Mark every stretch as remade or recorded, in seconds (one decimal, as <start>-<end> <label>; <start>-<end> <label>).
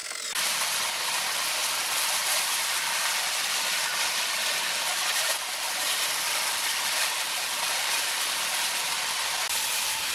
0.0-10.1 recorded